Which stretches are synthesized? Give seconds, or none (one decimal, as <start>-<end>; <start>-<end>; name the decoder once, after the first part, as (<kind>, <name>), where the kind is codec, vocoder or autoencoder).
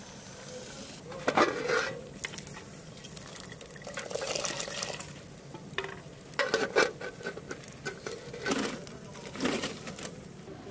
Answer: none